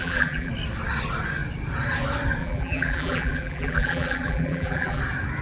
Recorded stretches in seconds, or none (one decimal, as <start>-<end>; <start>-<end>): 0.5-2.4; 5.0-5.4